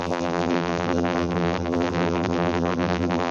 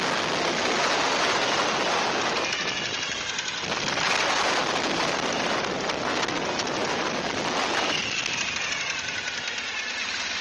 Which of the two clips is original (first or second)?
second